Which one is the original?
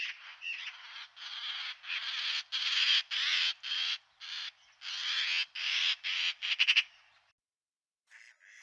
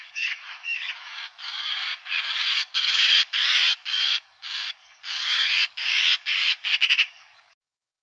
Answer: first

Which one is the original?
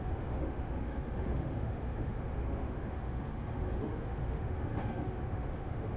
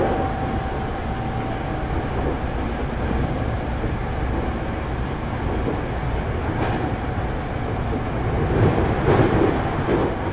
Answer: second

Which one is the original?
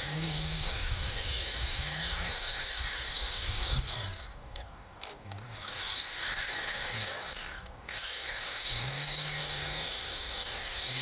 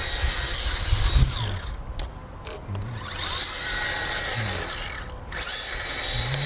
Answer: second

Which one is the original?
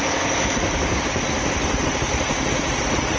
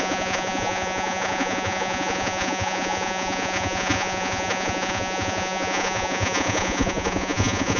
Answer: first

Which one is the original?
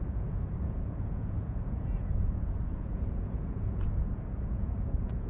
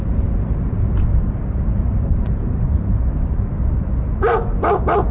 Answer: second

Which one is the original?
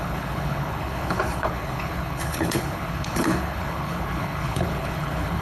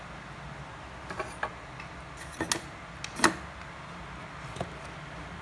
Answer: second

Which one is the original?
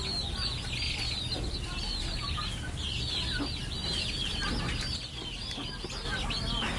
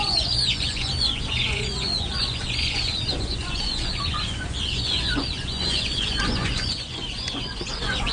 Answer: first